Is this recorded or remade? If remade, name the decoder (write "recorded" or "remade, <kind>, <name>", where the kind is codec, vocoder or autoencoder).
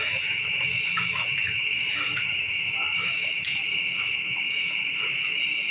remade, autoencoder, DAC-VAE